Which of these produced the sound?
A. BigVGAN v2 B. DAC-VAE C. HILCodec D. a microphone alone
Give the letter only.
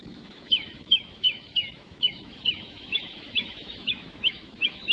B